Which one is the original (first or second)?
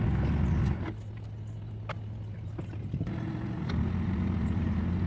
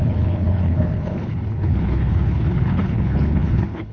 first